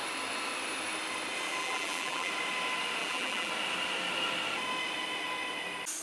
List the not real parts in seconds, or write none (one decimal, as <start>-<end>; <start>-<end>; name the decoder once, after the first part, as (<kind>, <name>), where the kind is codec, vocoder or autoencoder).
1.6-2.3 (vocoder, BigVGAN v2); 3.0-3.5